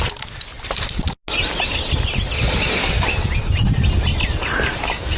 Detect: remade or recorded recorded